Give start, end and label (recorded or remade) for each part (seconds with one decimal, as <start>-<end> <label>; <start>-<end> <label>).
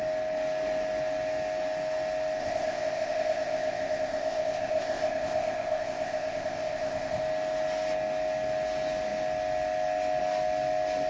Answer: 0.0-2.4 recorded; 2.4-7.2 remade; 7.2-11.1 recorded